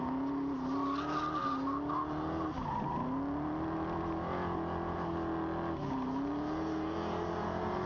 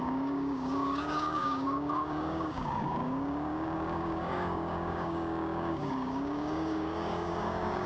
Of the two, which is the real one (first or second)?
first